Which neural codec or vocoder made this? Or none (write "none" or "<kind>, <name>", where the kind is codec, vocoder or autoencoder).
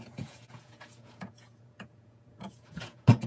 vocoder, Vocos